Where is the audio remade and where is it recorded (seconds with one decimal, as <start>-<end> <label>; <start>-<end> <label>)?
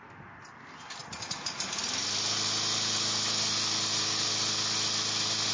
0.0-5.5 recorded